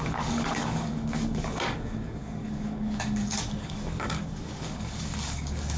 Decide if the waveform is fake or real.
fake